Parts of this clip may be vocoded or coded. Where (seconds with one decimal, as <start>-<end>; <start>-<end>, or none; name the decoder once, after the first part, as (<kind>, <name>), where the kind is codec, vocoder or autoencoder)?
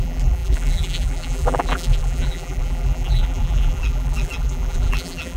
0.0-5.4 (vocoder, BigVGAN v2)